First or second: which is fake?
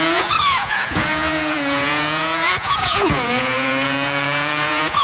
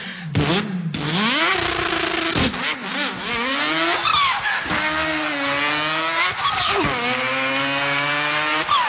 first